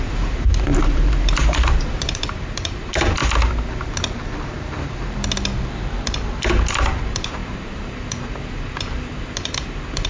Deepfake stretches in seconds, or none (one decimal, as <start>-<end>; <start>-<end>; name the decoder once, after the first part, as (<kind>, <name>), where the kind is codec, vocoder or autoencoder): 0.0-3.2 (vocoder, BigVGAN v2); 6.7-10.1